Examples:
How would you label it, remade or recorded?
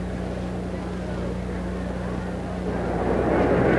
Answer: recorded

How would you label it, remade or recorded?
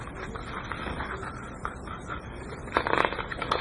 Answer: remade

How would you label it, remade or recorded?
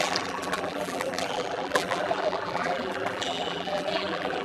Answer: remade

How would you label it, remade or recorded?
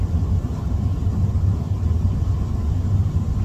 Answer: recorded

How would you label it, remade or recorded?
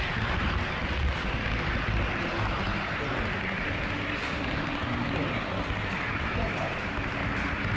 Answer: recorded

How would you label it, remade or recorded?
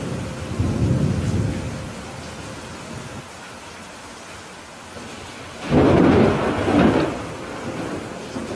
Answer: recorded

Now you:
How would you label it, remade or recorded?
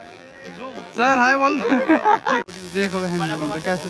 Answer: remade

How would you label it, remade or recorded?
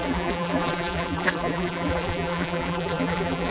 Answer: remade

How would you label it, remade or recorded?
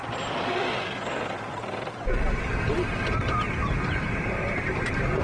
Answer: remade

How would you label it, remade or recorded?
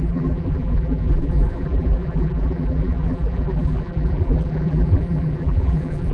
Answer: remade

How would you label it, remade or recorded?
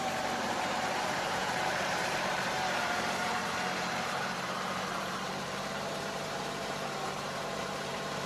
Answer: remade